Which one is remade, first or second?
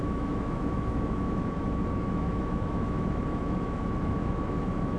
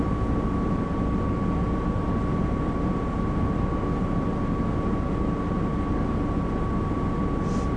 first